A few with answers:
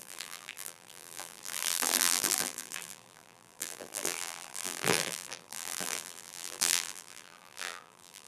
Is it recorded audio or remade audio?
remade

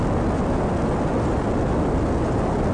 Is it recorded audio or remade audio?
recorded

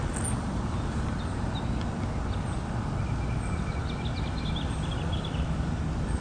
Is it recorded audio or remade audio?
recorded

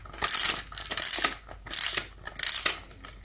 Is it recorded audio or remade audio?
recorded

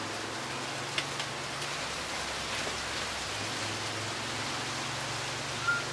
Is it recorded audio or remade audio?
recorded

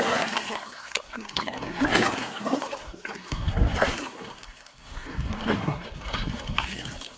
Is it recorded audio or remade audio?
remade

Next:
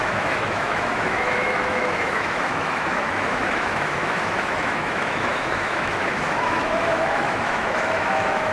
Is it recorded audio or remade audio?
remade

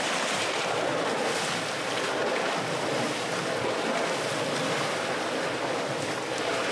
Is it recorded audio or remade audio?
recorded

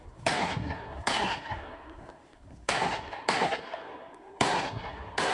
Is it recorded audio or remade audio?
remade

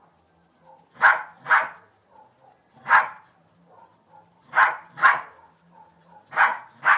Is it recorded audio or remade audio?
recorded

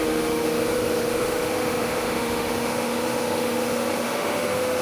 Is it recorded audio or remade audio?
remade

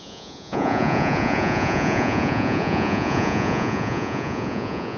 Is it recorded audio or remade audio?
remade